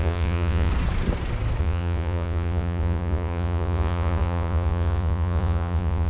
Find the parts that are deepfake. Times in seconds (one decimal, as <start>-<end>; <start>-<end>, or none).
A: 0.0-0.7; 1.6-6.1